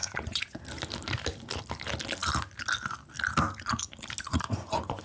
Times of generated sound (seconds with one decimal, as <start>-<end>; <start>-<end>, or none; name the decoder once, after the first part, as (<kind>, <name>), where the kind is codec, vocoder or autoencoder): 0.0-0.6 (vocoder, Vocos); 4.3-5.0